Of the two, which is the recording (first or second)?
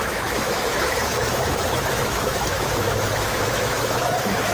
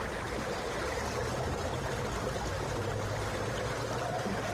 second